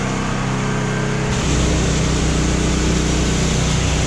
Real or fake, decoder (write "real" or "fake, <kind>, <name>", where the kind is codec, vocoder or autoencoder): real